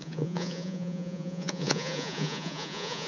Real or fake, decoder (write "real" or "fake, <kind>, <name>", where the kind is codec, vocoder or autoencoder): fake, vocoder, Vocos